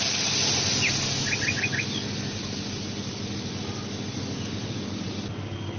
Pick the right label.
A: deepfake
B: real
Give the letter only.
B